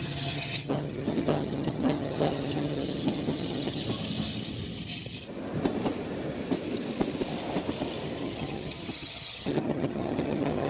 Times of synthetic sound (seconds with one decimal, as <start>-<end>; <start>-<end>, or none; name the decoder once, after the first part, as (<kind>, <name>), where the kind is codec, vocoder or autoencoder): 0.0-3.8 (vocoder, HiFi-GAN); 8.2-10.7